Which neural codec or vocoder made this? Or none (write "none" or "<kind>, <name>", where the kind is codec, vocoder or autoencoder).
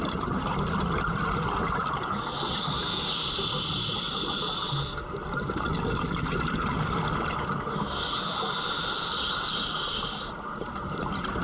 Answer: none